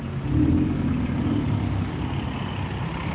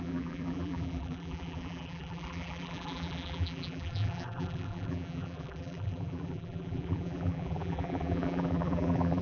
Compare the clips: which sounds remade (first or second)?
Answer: second